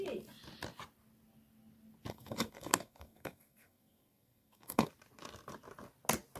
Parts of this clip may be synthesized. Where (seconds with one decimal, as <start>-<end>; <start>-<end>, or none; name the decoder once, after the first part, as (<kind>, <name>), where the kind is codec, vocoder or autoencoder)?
2.1-4.9 (codec, SNAC)